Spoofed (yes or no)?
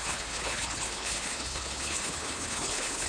yes